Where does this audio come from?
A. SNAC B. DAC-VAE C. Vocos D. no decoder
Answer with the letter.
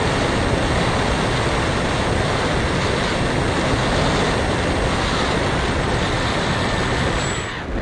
D